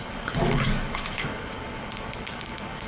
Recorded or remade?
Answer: remade